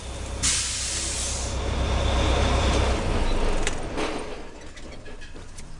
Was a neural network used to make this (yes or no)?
no